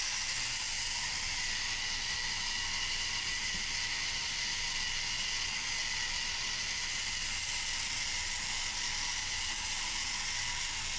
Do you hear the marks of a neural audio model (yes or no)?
no